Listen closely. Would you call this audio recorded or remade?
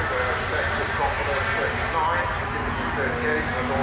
recorded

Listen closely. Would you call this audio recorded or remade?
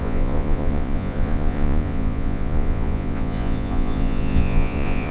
remade